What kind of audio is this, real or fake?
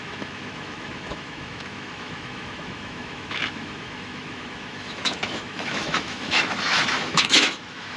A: fake